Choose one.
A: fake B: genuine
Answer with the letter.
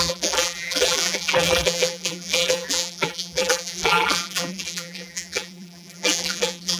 A